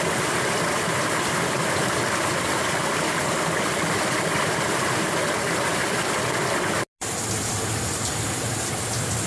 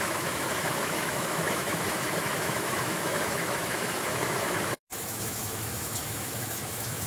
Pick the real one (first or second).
first